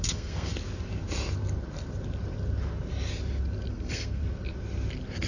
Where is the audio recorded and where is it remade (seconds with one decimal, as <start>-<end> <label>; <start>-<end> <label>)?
0.0-0.5 remade; 0.5-3.7 recorded; 3.7-4.2 remade; 4.2-5.3 recorded